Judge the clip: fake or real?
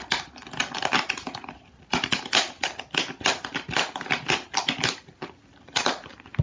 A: real